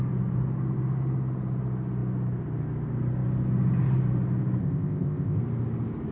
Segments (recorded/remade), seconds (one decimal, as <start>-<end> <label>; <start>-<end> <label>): 0.0-4.6 recorded; 4.6-5.4 remade; 5.4-6.1 recorded